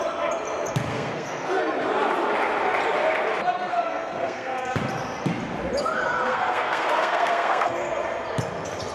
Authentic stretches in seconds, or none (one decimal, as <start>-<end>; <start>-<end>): 0.0-0.9; 1.6-3.7; 4.8-6.3; 7.9-8.9